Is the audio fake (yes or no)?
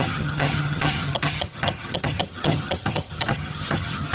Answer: yes